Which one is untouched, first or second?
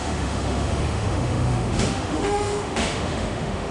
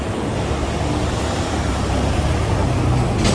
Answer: second